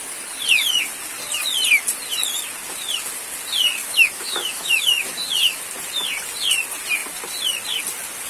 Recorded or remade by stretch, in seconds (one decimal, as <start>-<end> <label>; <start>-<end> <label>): 0.0-3.8 recorded; 3.8-5.6 remade; 5.6-8.3 recorded